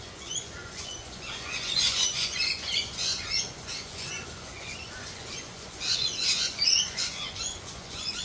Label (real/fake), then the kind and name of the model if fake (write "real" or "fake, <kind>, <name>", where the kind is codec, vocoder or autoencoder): fake, vocoder, Vocos